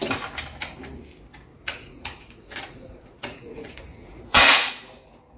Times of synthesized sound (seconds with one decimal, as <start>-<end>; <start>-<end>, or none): 1.5-4.7